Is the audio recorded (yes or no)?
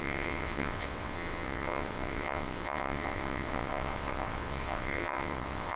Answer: no